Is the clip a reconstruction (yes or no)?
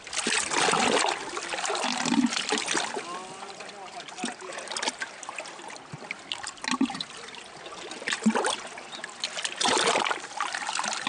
no